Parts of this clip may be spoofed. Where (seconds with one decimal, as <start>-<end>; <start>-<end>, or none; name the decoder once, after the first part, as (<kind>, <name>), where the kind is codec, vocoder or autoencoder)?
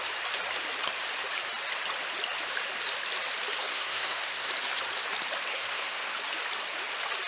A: 3.6-4.5 (codec, SNAC); 5.5-6.1